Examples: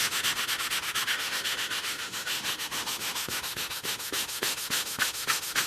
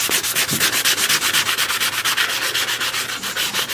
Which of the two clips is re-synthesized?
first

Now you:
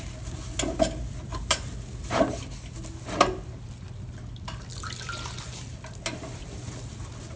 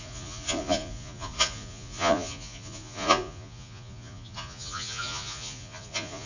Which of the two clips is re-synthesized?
second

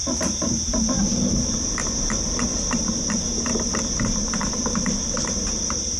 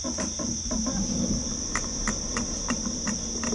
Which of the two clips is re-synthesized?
first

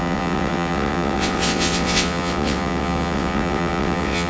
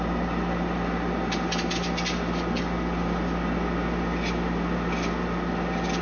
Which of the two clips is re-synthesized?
first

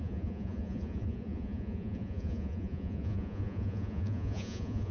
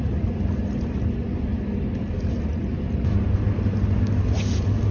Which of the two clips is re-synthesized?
first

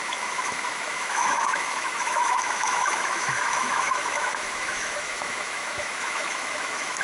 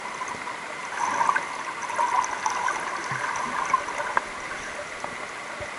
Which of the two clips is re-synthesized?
first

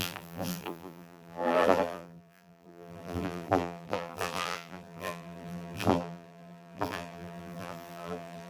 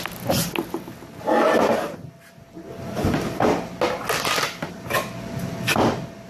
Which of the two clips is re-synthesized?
first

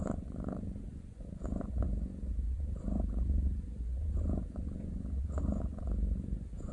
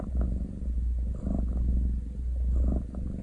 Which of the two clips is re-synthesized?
first